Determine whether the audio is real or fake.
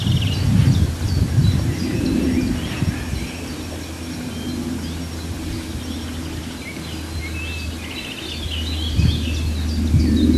real